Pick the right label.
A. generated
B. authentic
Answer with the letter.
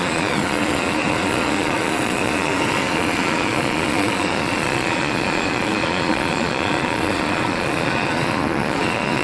A